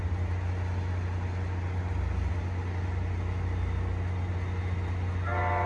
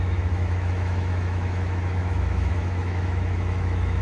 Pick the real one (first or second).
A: first